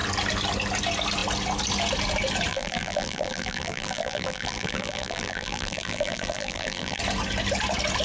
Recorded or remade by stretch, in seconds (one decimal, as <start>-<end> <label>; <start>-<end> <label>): 0.0-2.5 recorded; 2.5-7.0 remade; 7.0-8.0 recorded